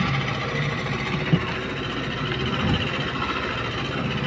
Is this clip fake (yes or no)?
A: no